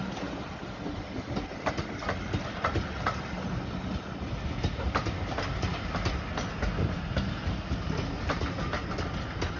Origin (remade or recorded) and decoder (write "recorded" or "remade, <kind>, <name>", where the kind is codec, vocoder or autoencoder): recorded